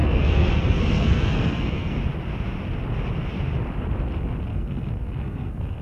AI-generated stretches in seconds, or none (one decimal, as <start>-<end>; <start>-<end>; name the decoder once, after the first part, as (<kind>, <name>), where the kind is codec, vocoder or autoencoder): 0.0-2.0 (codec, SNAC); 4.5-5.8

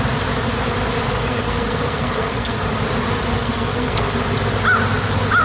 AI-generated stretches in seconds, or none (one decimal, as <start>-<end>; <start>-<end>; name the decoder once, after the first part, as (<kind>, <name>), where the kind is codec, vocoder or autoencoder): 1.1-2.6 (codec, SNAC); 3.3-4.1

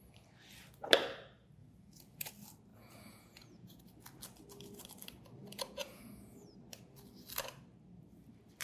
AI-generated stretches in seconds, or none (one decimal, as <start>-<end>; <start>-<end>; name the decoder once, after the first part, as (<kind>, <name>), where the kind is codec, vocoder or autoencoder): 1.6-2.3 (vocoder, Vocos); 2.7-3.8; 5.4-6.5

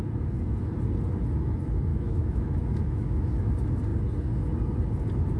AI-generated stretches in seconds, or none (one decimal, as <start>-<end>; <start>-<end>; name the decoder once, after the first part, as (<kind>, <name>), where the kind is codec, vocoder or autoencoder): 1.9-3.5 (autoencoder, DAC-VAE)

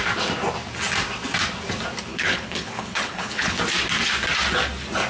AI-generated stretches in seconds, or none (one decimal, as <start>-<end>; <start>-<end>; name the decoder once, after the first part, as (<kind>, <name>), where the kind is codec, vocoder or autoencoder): 2.1-3.6 (codec, HILCodec)

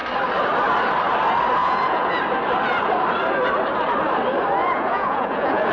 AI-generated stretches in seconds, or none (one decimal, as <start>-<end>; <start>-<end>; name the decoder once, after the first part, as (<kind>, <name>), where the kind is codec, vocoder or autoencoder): 1.6-2.1 (vocoder, Vocos); 4.6-5.7